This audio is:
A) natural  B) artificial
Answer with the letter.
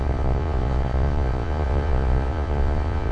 B